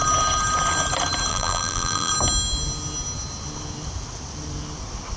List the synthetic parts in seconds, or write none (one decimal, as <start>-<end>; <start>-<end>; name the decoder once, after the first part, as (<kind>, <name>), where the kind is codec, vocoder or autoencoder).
1.3-2.1 (vocoder, BigVGAN v2)